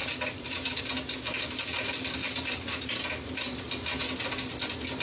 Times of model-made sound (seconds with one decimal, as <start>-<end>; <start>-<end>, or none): 0.0-0.8; 2.2-2.8